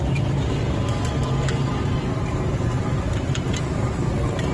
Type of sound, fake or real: real